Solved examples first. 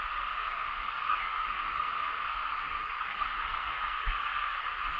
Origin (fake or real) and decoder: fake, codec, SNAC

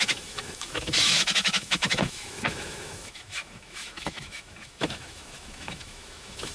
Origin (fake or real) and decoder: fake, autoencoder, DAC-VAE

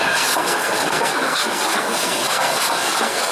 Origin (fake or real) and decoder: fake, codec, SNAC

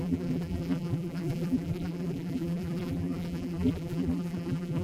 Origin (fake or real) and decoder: fake, vocoder, BigVGAN v2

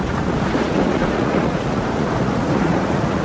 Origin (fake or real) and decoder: fake, vocoder, Vocos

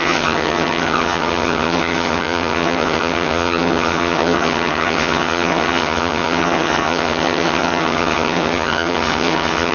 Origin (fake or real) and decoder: fake, vocoder, HiFi-GAN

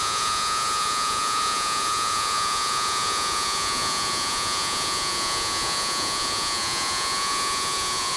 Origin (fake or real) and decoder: fake, vocoder, Vocos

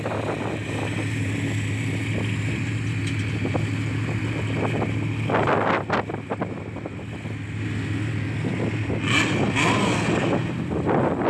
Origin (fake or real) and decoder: real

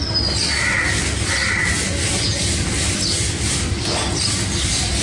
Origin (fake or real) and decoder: real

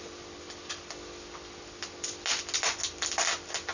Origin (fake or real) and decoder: real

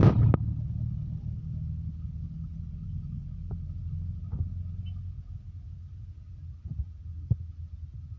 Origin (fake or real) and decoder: real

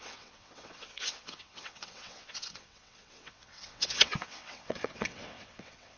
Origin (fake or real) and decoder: fake, vocoder, WaveNeXt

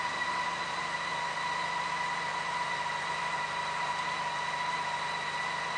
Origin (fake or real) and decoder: real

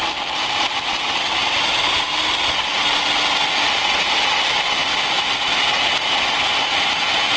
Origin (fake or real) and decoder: real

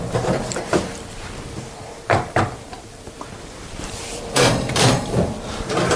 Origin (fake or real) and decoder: fake, vocoder, BigVGAN v2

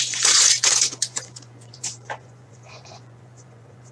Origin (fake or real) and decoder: fake, vocoder, Vocos